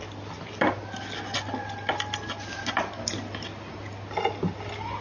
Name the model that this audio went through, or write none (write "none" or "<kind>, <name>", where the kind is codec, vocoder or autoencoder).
none